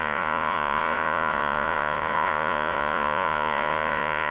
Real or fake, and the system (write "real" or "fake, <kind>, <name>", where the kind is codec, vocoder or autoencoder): fake, vocoder, Vocos